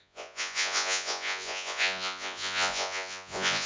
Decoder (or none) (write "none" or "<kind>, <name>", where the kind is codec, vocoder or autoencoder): vocoder, Vocos